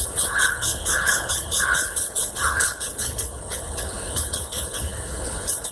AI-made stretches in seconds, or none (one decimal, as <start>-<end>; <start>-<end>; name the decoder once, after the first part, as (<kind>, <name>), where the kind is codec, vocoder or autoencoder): 0.0-5.7 (codec, HILCodec)